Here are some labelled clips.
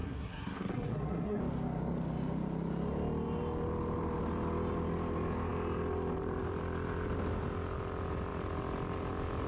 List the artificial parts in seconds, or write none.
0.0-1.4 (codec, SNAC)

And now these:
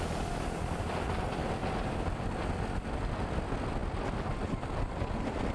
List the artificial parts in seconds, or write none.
none